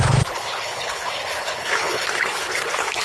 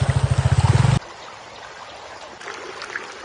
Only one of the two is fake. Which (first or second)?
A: first